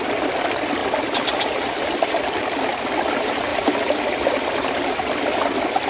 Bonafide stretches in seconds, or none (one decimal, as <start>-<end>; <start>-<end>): 0.8-3.0